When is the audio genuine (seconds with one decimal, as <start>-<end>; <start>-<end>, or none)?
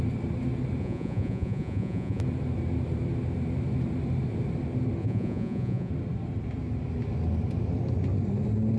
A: 0.0-0.8; 2.2-5.0; 5.9-8.8